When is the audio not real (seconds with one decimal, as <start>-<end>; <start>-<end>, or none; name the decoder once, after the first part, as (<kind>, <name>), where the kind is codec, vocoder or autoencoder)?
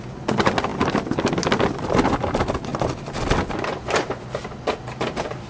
none